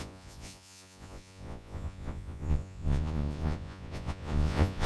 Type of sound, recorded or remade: remade